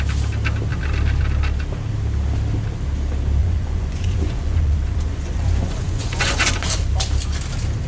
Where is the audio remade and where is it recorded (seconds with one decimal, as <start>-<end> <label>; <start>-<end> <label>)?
0.0-3.4 recorded; 3.4-6.9 remade; 6.9-7.9 recorded